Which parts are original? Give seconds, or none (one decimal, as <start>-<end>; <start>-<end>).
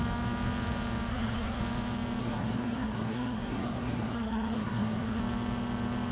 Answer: 0.0-1.1; 1.6-2.2; 5.2-6.1